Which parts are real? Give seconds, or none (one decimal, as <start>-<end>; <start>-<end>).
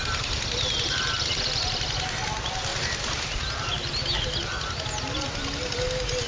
0.0-6.3